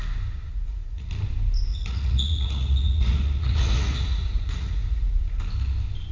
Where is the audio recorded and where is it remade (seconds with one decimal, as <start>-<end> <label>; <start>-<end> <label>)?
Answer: 0.0-0.5 recorded; 0.5-1.1 remade; 1.1-1.7 recorded; 1.7-5.4 remade; 5.4-6.1 recorded